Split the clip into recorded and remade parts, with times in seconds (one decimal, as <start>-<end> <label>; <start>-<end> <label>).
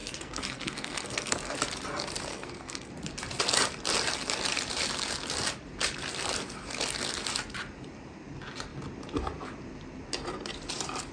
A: 0.0-1.6 remade; 1.6-2.3 recorded; 2.3-2.9 remade; 2.9-11.1 recorded